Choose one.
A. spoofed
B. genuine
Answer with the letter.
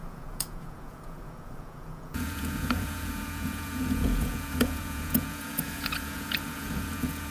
A